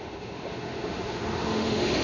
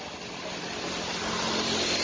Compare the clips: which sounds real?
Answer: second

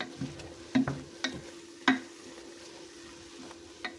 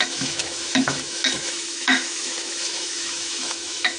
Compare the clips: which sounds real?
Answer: first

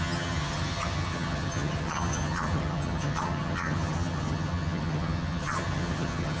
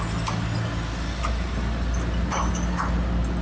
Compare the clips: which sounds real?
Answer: second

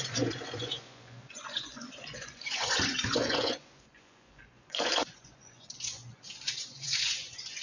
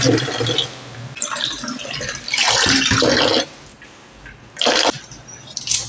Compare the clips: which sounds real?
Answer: second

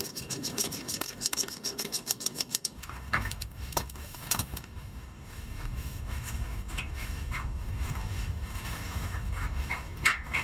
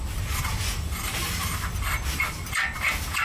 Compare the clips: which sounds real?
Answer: second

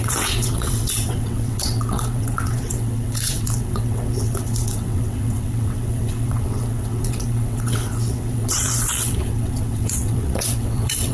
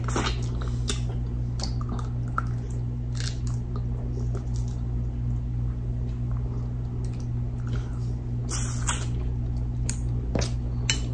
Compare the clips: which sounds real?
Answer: second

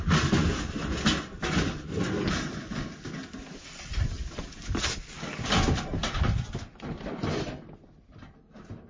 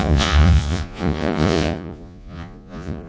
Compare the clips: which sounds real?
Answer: first